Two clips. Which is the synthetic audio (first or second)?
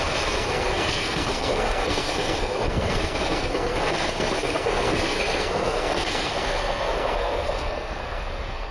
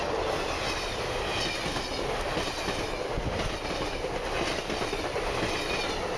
first